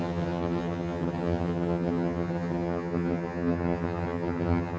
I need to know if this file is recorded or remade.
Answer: remade